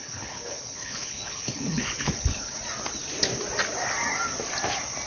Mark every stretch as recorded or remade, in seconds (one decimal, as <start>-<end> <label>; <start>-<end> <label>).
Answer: 0.0-2.6 remade; 2.6-5.1 recorded